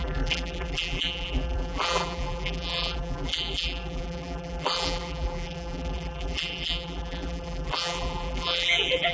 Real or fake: fake